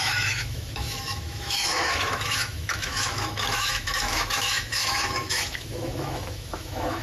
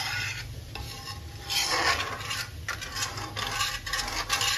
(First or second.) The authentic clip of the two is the second